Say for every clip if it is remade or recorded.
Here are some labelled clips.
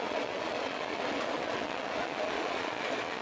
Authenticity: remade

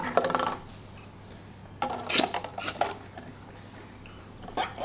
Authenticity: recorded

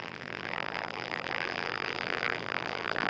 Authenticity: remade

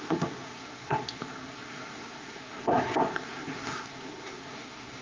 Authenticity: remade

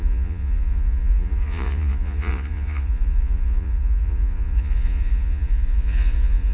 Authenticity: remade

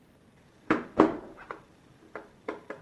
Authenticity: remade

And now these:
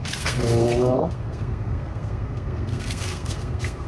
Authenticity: remade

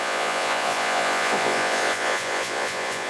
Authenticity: remade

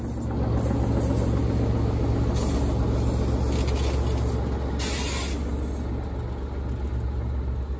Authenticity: recorded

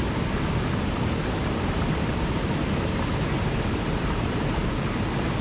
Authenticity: recorded